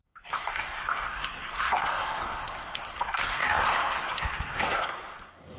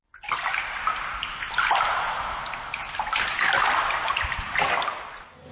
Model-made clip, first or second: first